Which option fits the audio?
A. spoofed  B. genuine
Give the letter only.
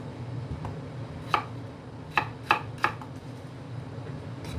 B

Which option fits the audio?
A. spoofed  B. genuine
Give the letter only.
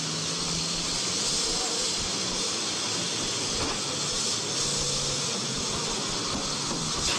B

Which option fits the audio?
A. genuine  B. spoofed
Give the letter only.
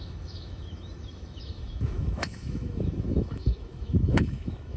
B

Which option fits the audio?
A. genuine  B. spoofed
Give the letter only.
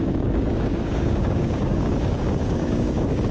B